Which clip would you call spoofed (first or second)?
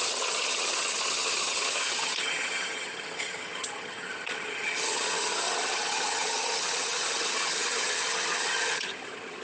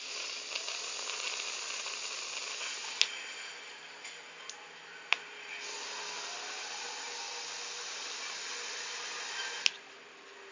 first